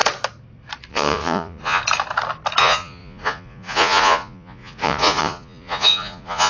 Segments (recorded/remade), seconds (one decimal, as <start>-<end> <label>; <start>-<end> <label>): 0.0-0.9 recorded; 0.9-1.8 remade; 1.8-2.6 recorded; 2.6-6.5 remade